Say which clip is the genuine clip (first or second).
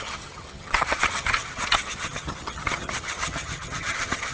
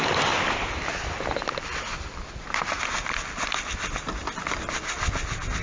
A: second